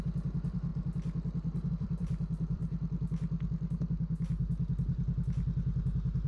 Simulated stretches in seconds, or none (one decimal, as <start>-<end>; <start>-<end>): 0.0-0.7; 1.7-2.6